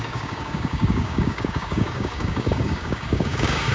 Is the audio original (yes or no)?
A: no